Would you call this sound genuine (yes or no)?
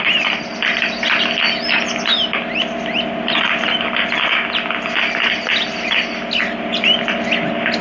yes